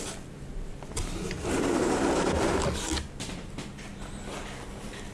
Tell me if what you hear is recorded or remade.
recorded